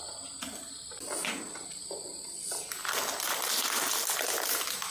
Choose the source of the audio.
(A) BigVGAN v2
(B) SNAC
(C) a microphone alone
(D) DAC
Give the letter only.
C